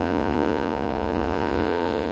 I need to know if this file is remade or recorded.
remade